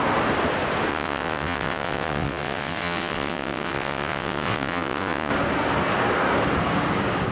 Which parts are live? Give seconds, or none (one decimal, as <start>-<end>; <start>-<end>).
0.0-0.9; 5.3-7.3